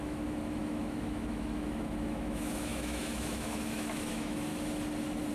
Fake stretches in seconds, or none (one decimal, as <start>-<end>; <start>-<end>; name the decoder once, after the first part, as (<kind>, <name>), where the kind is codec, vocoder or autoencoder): 0.0-4.5 (autoencoder, DAC-VAE)

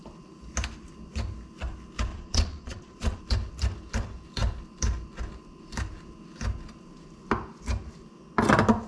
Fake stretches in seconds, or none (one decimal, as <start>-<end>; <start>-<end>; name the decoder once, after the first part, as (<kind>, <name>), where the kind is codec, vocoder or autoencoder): 2.1-3.2 (vocoder, Vocos)

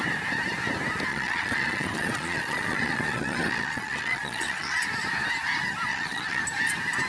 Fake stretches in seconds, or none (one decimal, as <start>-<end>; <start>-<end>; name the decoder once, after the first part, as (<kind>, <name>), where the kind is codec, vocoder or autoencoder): 1.1-4.8 (vocoder, Vocos); 5.9-6.4

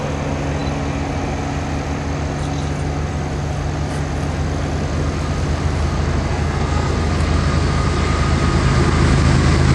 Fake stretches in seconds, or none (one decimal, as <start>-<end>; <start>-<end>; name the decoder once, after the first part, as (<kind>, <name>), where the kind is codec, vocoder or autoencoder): 6.3-6.9 (codec, SNAC)